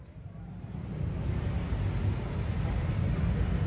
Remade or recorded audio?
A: recorded